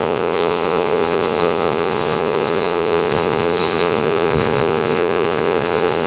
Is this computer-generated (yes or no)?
yes